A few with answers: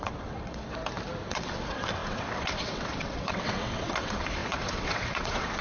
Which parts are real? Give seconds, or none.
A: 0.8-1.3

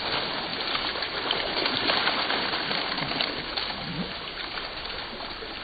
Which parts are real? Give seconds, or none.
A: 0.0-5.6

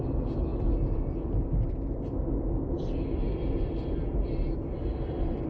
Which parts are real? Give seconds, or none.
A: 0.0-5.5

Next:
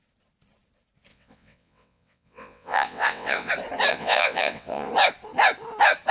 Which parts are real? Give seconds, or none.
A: 0.0-1.1; 3.5-3.9; 4.9-6.1

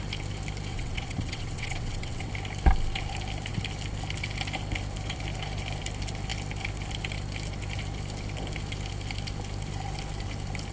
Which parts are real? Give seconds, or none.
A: 0.0-0.7; 2.3-10.7

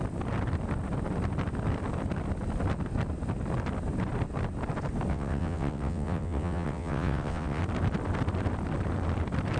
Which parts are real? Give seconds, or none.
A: 0.0-5.1; 7.6-9.6